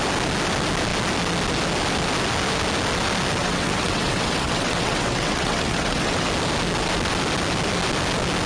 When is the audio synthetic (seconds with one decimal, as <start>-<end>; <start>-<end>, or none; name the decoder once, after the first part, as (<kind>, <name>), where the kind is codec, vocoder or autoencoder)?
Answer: 3.4-6.3 (vocoder, WaveNeXt)